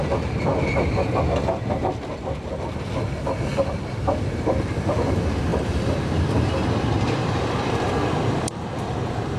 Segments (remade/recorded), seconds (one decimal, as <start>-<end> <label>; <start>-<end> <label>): 0.0-9.4 recorded